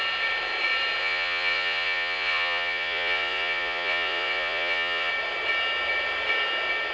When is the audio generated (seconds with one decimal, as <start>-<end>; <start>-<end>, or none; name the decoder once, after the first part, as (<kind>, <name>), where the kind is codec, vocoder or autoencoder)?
1.0-5.1 (vocoder, Vocos)